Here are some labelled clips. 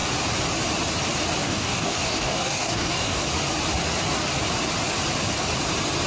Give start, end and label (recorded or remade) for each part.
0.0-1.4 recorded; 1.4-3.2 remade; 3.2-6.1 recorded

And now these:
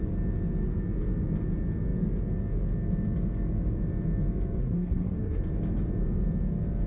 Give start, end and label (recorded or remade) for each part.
0.0-4.6 recorded; 4.6-5.4 remade; 5.4-6.9 recorded